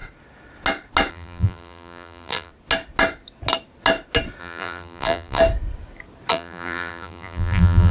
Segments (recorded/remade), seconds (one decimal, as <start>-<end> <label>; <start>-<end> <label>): 0.0-1.1 recorded; 1.1-2.5 remade; 2.5-4.4 recorded; 4.4-5.4 remade; 5.4-6.3 recorded; 6.3-7.9 remade